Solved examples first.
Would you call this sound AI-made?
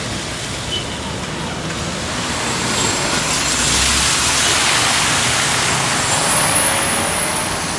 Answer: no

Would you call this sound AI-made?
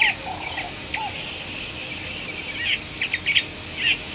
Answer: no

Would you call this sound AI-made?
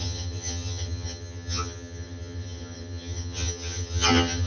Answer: yes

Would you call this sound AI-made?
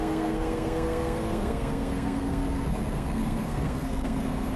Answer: yes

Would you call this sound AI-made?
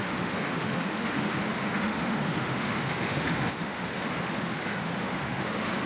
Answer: yes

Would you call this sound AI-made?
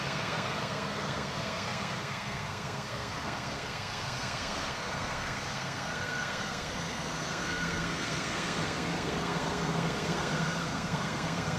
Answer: yes